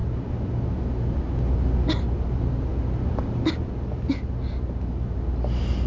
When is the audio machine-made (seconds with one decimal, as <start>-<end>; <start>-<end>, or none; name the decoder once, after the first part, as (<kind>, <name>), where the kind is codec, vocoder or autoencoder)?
none